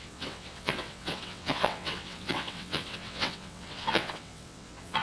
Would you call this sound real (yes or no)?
no